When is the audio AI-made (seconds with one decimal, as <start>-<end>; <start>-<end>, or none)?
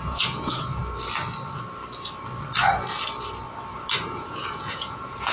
0.0-0.8; 4.0-5.3